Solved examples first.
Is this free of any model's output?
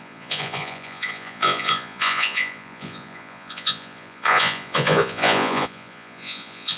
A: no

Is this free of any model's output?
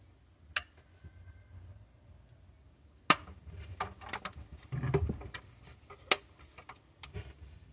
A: yes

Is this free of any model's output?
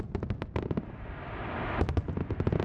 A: yes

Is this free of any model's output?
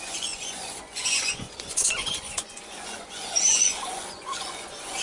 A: no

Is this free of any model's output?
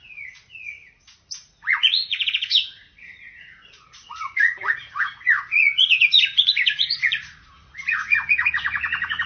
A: no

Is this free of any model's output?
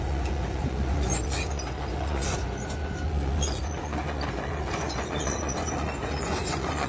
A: no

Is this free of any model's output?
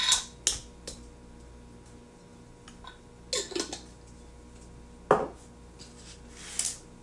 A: yes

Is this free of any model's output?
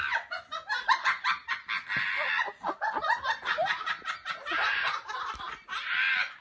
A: yes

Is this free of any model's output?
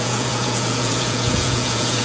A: no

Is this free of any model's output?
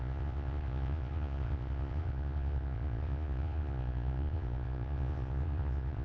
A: no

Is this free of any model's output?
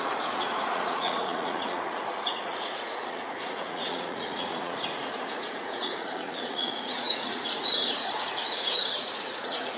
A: no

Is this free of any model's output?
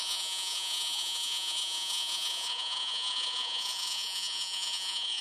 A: no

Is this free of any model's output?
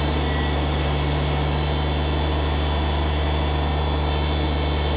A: yes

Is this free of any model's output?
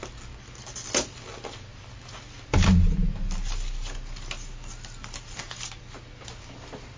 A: yes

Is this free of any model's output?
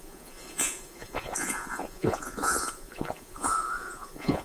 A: no